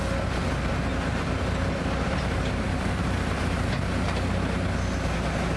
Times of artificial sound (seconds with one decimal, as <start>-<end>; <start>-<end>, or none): 0.9-3.7